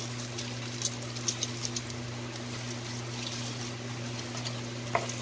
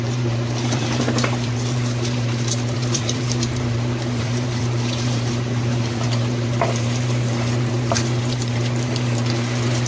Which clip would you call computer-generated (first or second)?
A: second